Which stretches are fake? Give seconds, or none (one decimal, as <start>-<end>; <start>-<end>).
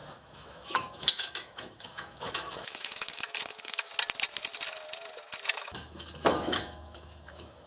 0.0-3.9; 5.5-7.7